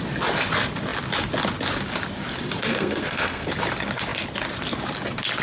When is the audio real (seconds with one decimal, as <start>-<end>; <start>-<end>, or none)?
0.0-2.7; 3.5-5.4